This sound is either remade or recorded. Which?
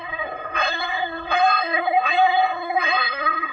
remade